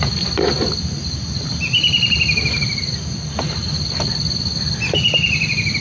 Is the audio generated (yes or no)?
no